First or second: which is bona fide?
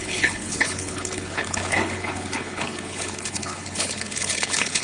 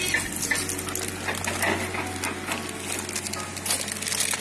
second